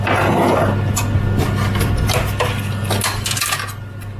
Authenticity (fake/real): real